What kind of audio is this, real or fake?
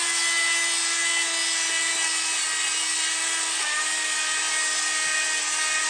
real